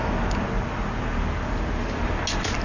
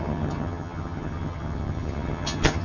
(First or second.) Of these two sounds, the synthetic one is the second